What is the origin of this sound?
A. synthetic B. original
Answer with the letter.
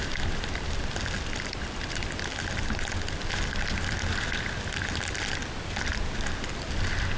B